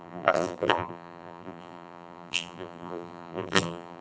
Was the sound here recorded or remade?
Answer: remade